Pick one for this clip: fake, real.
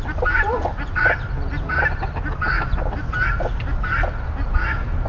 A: real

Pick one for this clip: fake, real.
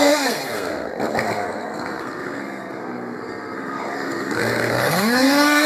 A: fake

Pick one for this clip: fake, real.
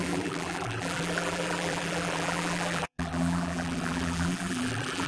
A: fake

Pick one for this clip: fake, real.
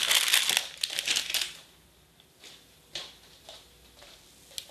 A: real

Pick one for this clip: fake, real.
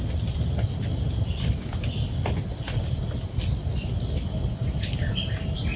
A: real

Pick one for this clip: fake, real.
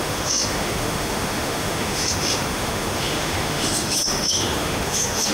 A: fake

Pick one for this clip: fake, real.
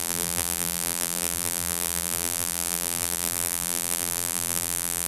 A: fake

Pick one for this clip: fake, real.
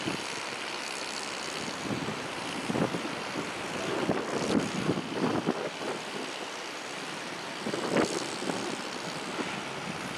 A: real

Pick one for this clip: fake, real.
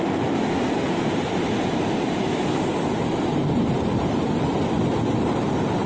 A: real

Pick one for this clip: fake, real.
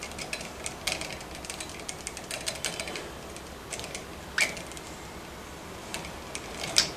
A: real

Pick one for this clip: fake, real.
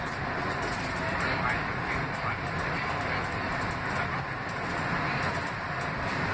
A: real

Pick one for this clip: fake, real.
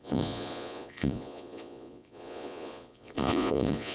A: fake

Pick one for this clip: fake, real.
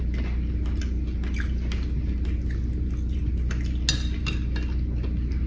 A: real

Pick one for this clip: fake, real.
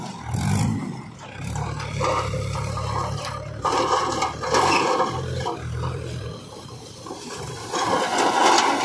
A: fake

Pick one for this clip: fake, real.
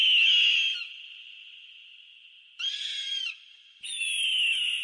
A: real